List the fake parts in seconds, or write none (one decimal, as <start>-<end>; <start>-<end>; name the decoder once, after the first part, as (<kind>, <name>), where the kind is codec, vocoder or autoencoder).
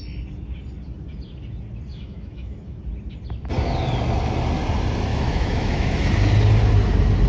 1.9-2.8 (autoencoder, DAC-VAE); 5.1-6.1